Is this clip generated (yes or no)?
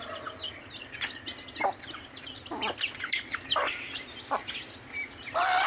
no